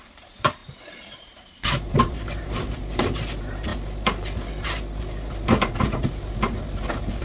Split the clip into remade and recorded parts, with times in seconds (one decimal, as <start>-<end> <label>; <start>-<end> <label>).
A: 0.0-3.7 remade; 3.7-7.2 recorded